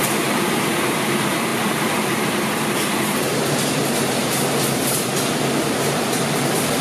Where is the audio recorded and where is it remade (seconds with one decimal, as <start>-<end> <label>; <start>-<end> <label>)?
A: 0.0-6.8 recorded